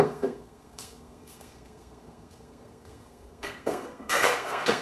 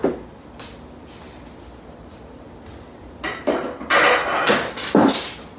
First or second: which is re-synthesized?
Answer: first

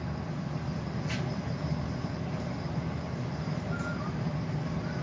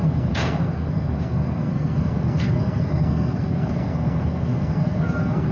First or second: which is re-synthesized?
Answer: second